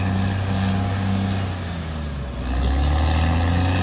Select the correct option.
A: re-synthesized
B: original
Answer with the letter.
B